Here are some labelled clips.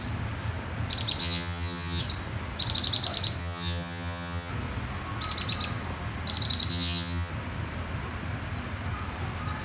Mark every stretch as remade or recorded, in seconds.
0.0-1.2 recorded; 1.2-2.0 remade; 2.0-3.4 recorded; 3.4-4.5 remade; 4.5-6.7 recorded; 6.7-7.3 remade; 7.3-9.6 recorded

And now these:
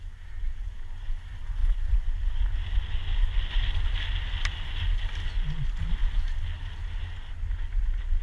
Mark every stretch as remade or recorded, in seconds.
0.0-8.2 recorded

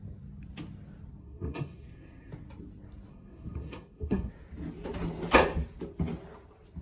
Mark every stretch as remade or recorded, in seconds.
0.0-1.2 recorded; 1.2-2.3 remade; 2.3-3.1 recorded; 3.1-4.3 remade; 4.3-6.8 recorded

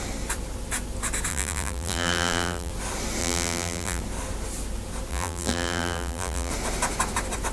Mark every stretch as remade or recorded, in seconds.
0.0-1.3 recorded; 1.3-2.7 remade; 2.7-3.2 recorded; 3.2-4.0 remade; 4.0-5.1 recorded; 5.1-6.5 remade; 6.5-7.5 recorded

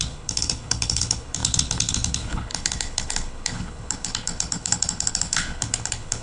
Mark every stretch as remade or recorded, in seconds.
0.0-6.2 remade

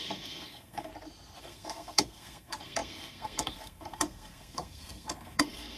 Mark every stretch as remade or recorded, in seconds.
0.0-0.9 remade; 0.9-1.4 recorded; 1.4-5.8 remade